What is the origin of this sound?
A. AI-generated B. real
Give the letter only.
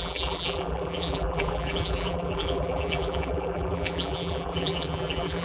A